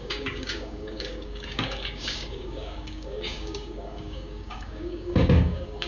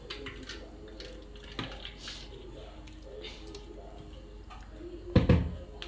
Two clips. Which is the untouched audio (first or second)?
second